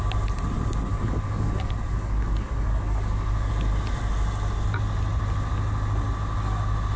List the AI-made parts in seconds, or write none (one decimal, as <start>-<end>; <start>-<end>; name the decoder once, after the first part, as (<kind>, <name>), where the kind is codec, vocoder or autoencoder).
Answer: 0.9-3.5 (codec, DAC)